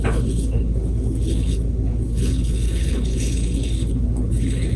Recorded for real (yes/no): no